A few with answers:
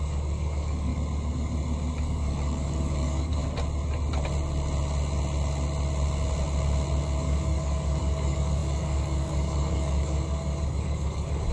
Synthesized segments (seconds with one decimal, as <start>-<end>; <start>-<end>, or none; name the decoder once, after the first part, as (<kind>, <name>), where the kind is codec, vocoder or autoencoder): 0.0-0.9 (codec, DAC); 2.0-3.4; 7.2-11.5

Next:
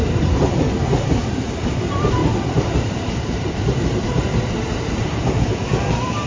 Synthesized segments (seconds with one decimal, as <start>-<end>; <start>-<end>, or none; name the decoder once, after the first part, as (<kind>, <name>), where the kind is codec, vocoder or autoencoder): 0.0-6.3 (vocoder, BigVGAN v2)

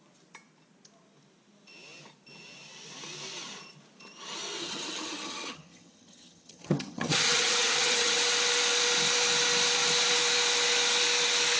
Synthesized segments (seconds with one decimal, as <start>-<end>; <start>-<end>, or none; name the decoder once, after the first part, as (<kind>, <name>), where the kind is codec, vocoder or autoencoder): 4.6-8.2 (vocoder, HiFi-GAN)

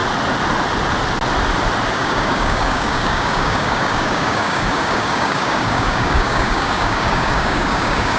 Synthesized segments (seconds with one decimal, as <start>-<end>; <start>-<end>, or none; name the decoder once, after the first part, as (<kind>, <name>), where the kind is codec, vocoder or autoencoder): 1.9-8.2 (codec, DAC)

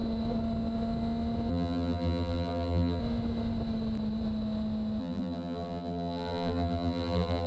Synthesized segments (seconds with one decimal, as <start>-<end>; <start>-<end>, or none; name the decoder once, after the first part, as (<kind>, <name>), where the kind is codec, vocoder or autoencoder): 1.5-3.0 (vocoder, BigVGAN v2); 5.0-7.5